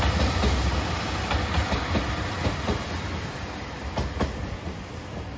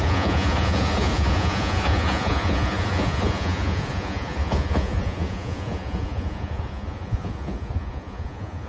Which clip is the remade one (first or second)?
second